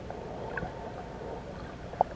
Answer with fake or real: real